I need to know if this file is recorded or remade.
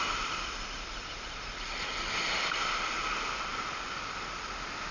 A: recorded